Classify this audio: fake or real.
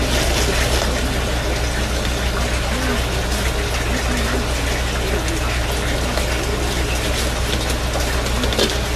real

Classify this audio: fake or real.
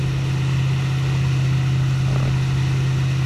real